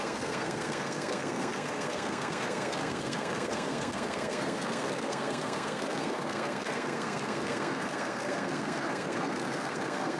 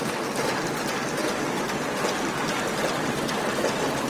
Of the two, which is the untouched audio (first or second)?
second